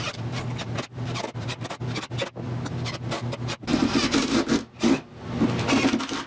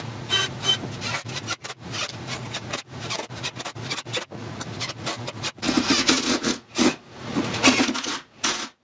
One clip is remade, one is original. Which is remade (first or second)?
second